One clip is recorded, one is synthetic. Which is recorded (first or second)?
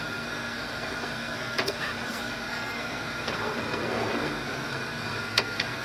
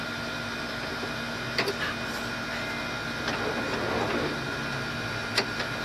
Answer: second